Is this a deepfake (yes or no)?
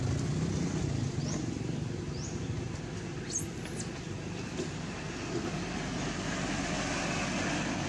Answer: no